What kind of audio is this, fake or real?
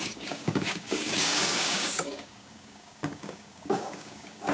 fake